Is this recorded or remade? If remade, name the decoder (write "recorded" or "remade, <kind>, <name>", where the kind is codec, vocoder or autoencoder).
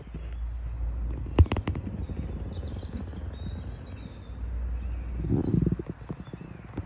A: recorded